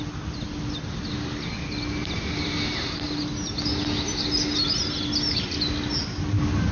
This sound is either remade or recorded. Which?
recorded